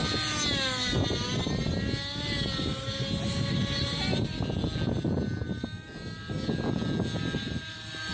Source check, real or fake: real